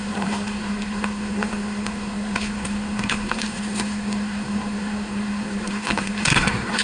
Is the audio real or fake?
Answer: fake